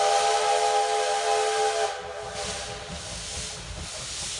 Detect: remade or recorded recorded